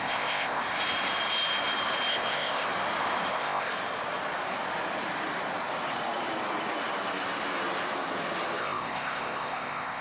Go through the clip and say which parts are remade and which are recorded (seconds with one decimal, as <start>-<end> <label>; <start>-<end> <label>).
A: 0.0-0.6 remade; 0.6-2.1 recorded; 2.1-2.7 remade; 2.7-3.3 recorded; 3.3-3.7 remade; 3.7-8.6 recorded; 8.6-10.0 remade

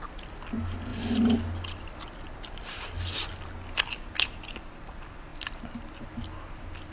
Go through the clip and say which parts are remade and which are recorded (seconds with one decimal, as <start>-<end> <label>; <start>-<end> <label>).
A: 0.0-6.9 recorded

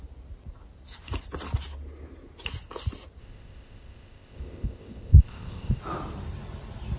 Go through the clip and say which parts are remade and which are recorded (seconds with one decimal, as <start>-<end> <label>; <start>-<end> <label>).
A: 0.0-3.2 recorded; 3.2-5.8 remade; 5.8-7.0 recorded

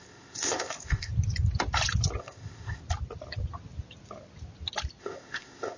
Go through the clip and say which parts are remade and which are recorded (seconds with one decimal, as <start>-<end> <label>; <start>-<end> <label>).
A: 0.0-1.1 remade; 1.1-2.2 recorded; 2.2-2.8 remade; 2.8-5.0 recorded; 5.0-5.8 remade

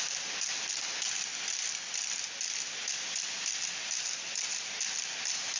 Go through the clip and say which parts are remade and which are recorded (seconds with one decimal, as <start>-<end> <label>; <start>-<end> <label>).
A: 0.0-5.6 recorded

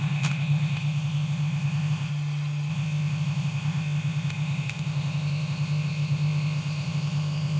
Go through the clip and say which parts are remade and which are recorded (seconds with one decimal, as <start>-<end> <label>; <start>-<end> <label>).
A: 0.0-2.1 remade; 2.1-2.7 recorded; 2.7-7.6 remade

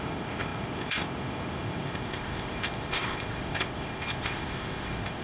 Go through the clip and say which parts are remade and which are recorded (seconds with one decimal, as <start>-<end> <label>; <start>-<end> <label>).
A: 0.0-5.2 remade

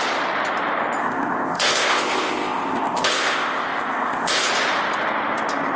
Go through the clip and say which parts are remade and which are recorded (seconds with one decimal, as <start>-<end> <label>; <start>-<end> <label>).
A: 0.0-1.0 recorded; 1.0-4.5 remade; 4.5-5.8 recorded